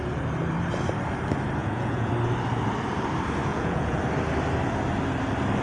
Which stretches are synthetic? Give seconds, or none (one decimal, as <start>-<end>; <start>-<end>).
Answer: 1.6-2.1; 3.5-4.0